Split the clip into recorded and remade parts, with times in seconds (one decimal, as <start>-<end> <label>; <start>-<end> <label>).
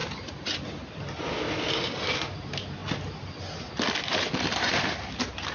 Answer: 0.0-5.5 recorded